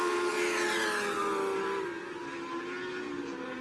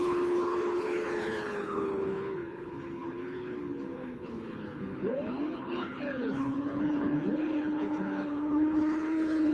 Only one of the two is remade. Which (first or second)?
second